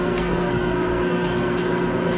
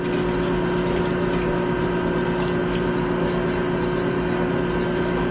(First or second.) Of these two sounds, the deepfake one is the first